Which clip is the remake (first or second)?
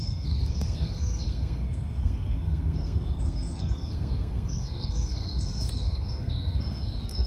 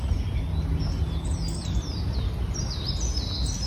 first